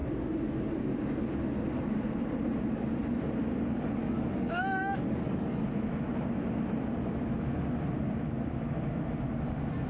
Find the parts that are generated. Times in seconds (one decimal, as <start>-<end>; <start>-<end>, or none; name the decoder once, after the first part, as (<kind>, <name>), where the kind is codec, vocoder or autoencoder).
4.0-5.7 (codec, DAC)